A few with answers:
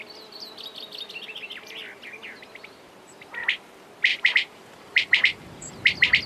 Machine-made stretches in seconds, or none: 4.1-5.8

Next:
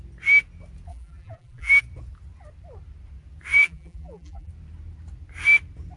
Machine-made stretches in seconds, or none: 0.9-1.8; 3.6-4.5

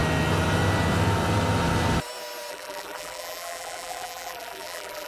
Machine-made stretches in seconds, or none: 2.5-5.1

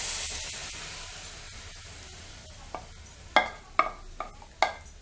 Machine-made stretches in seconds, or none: none

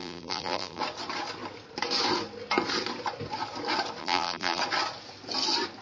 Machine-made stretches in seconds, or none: 0.0-0.8; 4.0-4.6

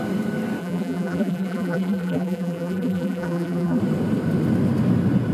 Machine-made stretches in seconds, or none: 0.6-3.8